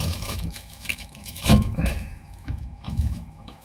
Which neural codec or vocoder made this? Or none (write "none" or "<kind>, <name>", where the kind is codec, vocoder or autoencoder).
autoencoder, DAC-VAE